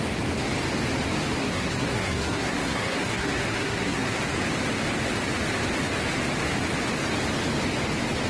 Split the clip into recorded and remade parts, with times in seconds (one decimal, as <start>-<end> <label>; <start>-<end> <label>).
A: 0.0-1.4 recorded; 1.4-4.2 remade; 4.2-8.3 recorded